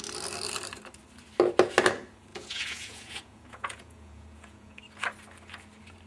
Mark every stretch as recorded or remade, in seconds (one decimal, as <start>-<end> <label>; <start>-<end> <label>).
0.0-2.3 recorded; 2.3-4.8 remade; 4.8-6.1 recorded